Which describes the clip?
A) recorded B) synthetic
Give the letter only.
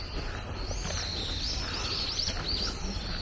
A